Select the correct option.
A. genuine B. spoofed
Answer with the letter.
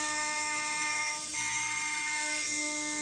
B